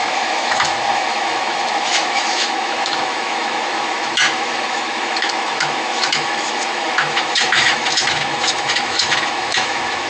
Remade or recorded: remade